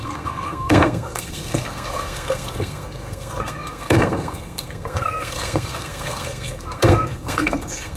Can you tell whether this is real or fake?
fake